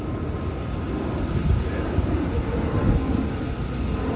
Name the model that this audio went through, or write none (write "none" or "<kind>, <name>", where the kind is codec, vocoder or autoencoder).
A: none